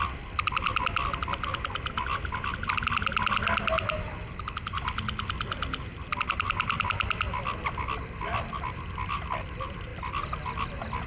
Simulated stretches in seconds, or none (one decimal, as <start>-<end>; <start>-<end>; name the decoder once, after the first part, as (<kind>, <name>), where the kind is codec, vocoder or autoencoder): none